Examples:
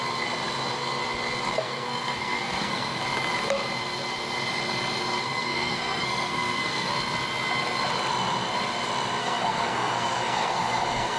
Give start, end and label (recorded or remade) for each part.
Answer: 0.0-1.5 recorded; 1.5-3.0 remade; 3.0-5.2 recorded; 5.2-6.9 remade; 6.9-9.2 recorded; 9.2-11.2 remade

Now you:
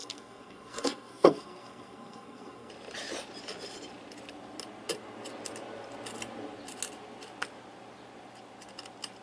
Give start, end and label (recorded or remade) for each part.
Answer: 0.0-2.7 remade; 2.7-9.2 recorded

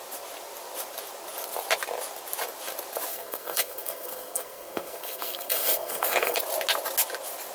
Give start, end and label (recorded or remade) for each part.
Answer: 0.0-3.1 recorded; 3.1-6.4 remade; 6.4-7.5 recorded